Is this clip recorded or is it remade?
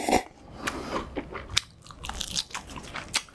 recorded